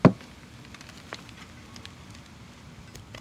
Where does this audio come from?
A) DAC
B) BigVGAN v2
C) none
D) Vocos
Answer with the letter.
C